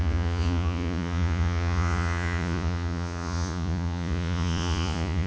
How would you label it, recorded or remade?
remade